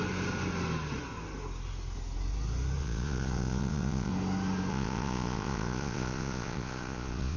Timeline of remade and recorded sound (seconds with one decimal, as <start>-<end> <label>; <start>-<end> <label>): 0.0-2.8 recorded; 2.8-4.1 remade; 4.1-4.7 recorded; 4.7-7.4 remade